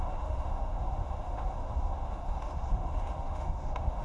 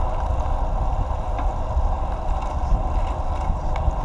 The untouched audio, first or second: second